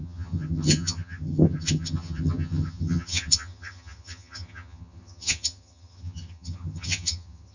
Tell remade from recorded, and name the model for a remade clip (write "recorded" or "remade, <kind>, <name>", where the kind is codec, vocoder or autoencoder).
remade, vocoder, HiFi-GAN